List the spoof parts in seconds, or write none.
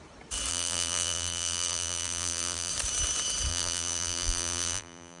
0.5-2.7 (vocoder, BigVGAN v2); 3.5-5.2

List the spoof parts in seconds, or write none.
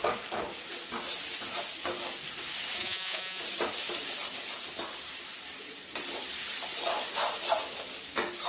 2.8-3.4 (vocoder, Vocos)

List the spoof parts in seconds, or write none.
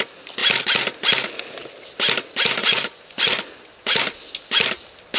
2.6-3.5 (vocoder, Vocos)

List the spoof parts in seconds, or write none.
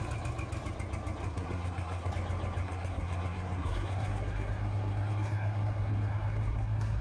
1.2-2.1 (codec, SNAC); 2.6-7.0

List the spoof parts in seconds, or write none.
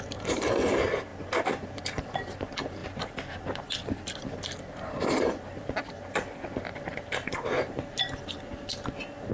2.8-7.3 (vocoder, BigVGAN v2)